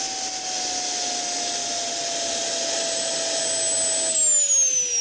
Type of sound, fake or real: real